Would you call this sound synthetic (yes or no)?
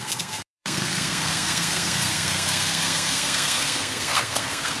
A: yes